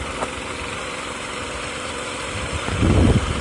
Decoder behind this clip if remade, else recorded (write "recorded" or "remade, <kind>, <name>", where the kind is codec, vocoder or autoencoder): recorded